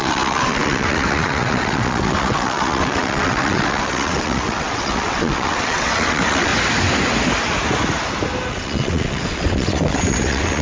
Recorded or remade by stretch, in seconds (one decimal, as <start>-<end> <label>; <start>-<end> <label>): 0.0-6.5 remade; 6.5-8.5 recorded; 8.5-10.6 remade